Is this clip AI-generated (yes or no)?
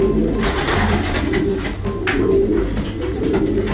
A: no